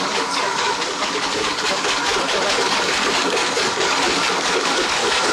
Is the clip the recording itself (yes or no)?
no